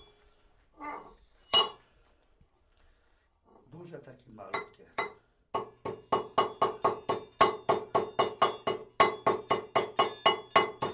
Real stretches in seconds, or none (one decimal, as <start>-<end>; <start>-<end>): 0.0-1.4; 5.2-10.9

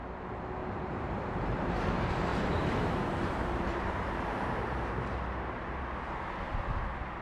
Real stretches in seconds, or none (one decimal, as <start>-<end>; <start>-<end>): 0.0-0.6; 1.6-2.3; 5.8-7.2